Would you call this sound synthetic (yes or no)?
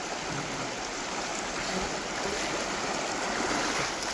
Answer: no